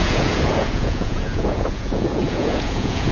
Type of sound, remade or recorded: remade